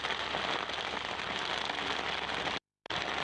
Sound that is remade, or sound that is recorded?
recorded